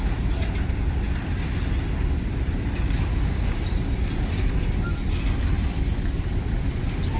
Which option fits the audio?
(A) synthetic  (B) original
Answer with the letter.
B